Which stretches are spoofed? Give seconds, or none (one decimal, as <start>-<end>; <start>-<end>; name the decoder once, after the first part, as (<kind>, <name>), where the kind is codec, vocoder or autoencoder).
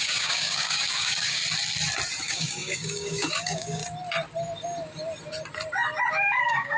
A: 0.0-1.4 (codec, DAC); 2.2-3.8; 6.1-6.8